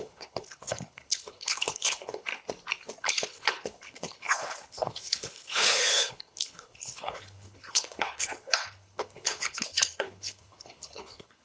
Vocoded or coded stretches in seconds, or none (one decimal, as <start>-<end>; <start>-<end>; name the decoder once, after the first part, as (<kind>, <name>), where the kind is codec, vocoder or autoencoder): 0.0-2.3 (codec, HILCodec); 3.0-11.4